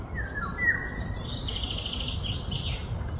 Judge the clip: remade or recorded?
recorded